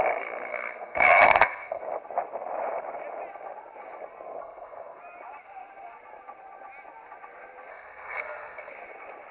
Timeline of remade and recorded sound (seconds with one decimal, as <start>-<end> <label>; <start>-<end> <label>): 0.0-0.5 recorded; 0.5-1.8 remade; 1.8-4.4 recorded; 4.4-5.0 remade; 5.0-7.7 recorded; 7.7-8.7 remade; 8.7-9.3 recorded